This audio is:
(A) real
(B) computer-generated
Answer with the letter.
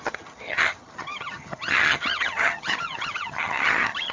B